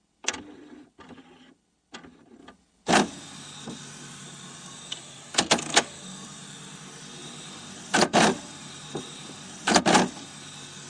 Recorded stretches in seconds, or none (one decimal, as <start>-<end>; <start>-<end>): 0.0-7.2; 9.8-10.9